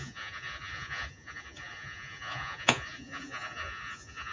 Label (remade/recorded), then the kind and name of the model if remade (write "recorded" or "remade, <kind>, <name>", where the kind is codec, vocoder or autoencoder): remade, vocoder, Vocos